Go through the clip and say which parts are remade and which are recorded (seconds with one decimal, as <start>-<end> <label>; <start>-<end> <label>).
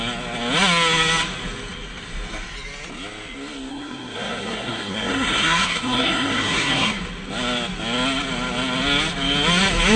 0.0-3.7 recorded; 3.7-7.0 remade; 7.0-10.0 recorded